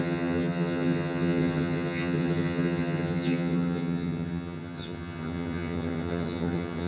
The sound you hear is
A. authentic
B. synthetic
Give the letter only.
B